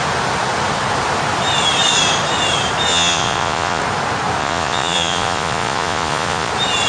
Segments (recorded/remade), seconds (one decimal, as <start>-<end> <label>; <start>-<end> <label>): 0.0-2.9 recorded; 2.9-3.8 remade; 3.8-4.4 recorded; 4.4-6.5 remade; 6.5-6.9 recorded